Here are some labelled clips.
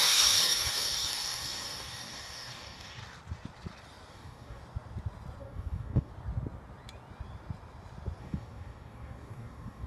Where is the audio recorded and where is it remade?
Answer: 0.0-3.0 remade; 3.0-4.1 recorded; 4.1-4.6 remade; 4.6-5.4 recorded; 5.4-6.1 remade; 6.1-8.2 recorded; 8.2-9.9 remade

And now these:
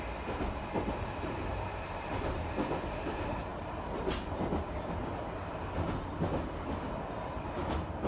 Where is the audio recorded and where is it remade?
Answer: 0.0-8.1 recorded

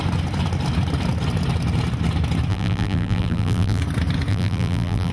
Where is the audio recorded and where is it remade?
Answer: 0.0-2.5 recorded; 2.5-3.8 remade; 3.8-4.3 recorded; 4.3-5.1 remade

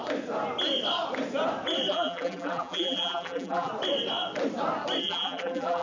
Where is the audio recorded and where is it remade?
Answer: 0.0-1.9 recorded; 1.9-3.7 remade; 3.7-5.0 recorded; 5.0-5.8 remade